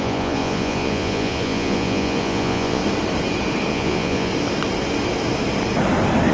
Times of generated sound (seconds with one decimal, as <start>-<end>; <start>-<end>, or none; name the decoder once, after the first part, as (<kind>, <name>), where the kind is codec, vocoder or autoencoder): 0.0-2.8 (vocoder, Vocos); 3.7-4.3